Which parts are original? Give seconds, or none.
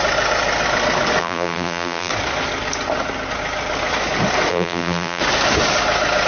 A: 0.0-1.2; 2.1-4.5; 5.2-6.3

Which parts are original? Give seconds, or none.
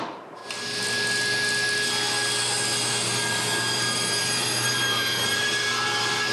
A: 0.4-3.3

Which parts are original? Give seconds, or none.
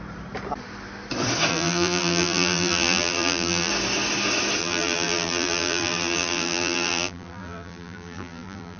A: 0.0-1.5; 3.7-4.6